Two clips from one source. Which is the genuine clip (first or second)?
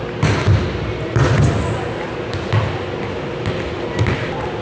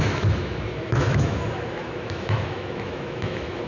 first